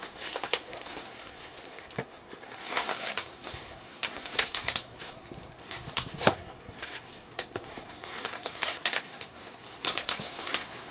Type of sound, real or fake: fake